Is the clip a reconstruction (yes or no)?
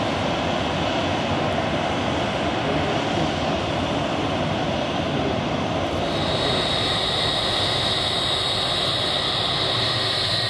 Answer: no